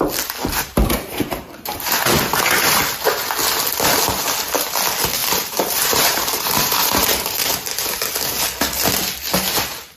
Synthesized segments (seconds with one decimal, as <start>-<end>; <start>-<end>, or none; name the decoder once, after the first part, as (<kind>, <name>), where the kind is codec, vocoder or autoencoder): 0.4-2.8 (vocoder, BigVGAN v2); 5.2-7.5